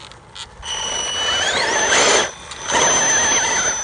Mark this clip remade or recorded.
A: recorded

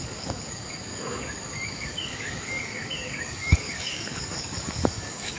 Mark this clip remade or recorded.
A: remade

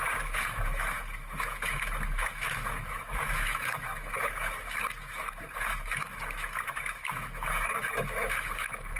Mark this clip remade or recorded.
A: remade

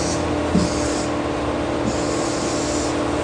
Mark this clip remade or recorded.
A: recorded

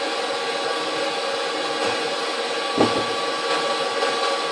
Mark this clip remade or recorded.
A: recorded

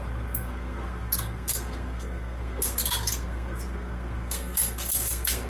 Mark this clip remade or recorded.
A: remade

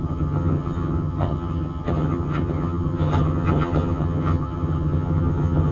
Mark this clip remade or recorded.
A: remade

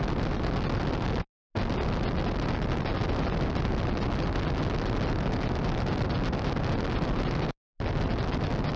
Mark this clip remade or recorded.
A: recorded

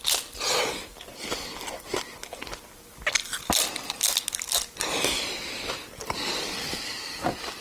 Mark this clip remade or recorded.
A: recorded